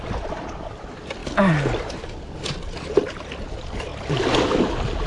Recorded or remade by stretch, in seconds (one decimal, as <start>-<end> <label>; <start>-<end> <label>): 0.0-5.1 recorded